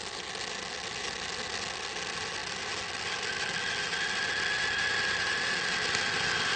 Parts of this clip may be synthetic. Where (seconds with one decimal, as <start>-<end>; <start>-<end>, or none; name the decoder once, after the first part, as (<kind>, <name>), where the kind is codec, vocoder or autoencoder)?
none